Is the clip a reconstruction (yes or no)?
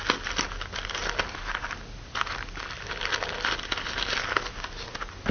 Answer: no